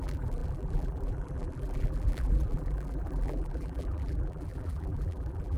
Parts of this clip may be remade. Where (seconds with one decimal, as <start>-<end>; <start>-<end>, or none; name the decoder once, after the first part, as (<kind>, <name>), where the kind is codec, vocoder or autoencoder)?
0.0-5.6 (vocoder, BigVGAN v2)